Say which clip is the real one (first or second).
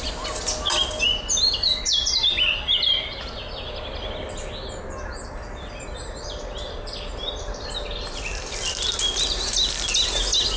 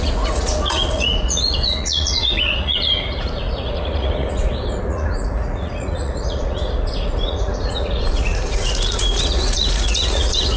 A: first